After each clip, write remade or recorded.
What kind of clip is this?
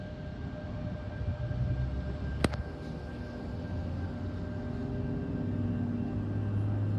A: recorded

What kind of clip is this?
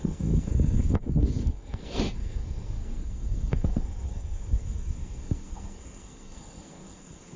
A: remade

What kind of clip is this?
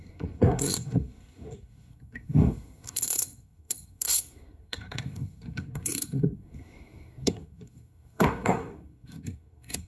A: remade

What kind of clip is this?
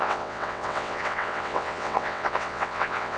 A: remade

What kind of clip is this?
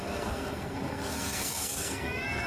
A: remade